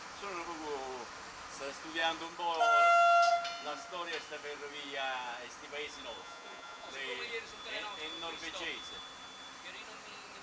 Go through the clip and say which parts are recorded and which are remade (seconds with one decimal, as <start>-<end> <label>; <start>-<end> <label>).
0.0-6.2 recorded; 6.2-6.9 remade; 6.9-10.4 recorded